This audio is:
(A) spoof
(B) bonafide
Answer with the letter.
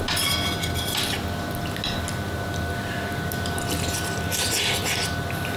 B